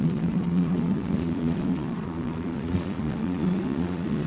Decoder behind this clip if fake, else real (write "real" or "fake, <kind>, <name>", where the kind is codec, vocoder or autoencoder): fake, vocoder, Vocos